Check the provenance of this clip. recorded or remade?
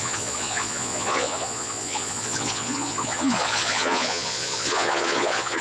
remade